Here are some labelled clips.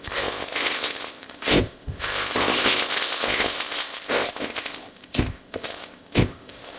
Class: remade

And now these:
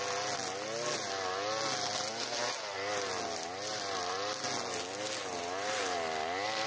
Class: recorded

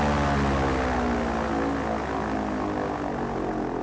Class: recorded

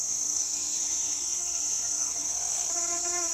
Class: remade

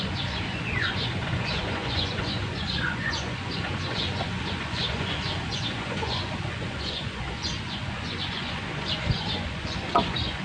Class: remade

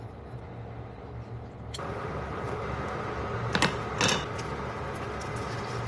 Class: recorded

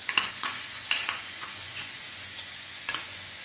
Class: remade